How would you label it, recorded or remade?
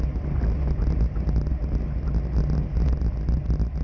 recorded